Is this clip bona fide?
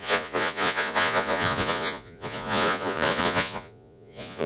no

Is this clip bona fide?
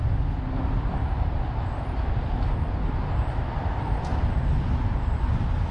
yes